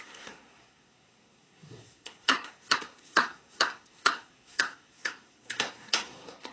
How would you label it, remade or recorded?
remade